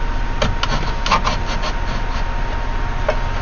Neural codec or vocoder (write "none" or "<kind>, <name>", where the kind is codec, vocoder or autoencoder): none